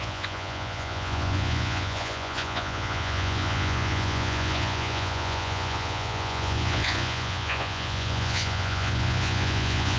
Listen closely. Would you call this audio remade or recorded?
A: remade